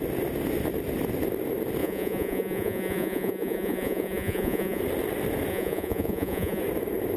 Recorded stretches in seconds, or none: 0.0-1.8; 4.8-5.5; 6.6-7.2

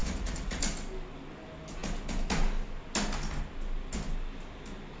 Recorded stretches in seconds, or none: 0.6-5.0

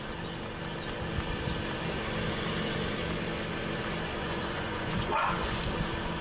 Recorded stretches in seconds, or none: 0.0-4.2; 5.6-6.2

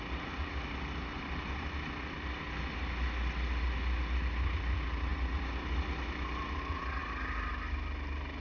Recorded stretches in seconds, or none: 0.0-8.4

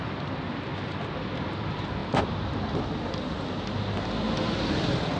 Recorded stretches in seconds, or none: 0.0-5.2

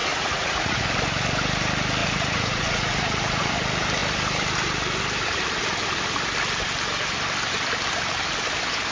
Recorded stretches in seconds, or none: 0.8-2.0; 3.5-8.9

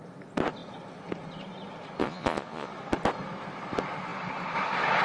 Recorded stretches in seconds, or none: 0.0-2.0; 2.7-5.0